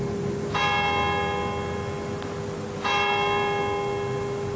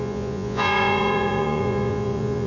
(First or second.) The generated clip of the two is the second